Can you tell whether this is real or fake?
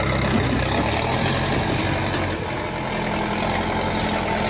real